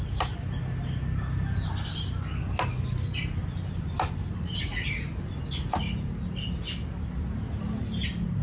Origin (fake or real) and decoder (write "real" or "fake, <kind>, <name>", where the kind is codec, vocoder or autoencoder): real